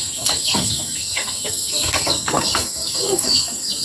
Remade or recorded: remade